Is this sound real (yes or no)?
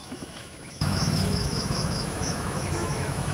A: no